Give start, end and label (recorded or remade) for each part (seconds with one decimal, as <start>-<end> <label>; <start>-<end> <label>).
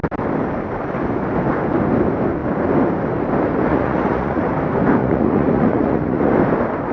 0.0-3.7 recorded; 3.7-4.4 remade; 4.4-5.0 recorded; 5.0-6.3 remade; 6.3-6.9 recorded